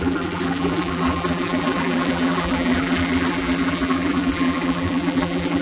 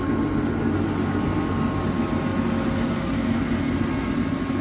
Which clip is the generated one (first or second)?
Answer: first